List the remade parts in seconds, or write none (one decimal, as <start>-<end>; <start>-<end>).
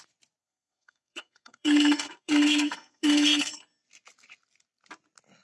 0.4-3.6